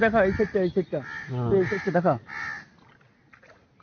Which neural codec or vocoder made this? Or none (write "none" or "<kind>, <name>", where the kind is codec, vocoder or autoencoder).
none